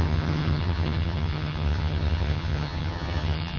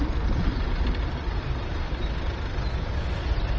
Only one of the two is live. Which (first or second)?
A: second